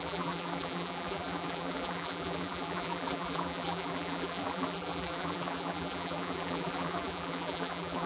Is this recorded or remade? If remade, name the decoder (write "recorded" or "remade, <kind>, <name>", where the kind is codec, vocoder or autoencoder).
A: remade, vocoder, BigVGAN v2